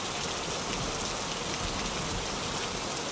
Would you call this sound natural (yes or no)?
yes